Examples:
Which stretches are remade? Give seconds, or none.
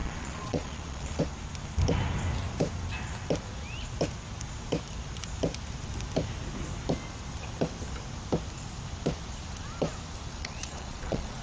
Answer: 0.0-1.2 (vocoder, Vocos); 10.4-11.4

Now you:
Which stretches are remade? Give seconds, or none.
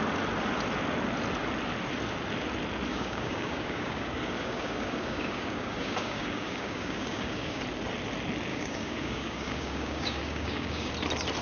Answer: 2.9-7.6 (codec, DAC); 8.5-10.9